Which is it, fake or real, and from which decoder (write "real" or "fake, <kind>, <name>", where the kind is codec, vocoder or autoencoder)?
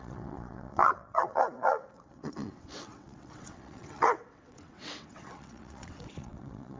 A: fake, vocoder, WaveNeXt